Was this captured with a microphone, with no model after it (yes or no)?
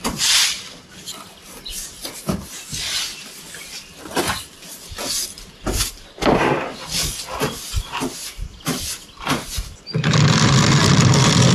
no